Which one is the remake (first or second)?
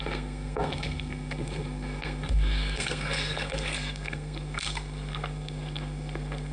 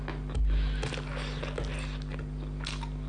first